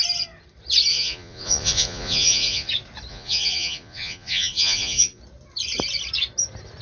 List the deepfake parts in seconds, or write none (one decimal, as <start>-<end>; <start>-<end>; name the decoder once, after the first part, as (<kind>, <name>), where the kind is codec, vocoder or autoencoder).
0.9-2.7 (vocoder, Vocos); 3.1-5.2